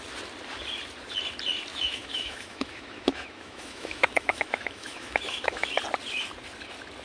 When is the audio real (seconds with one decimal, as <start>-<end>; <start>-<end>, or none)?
0.0-1.7; 5.7-7.0